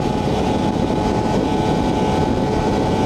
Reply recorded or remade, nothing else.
recorded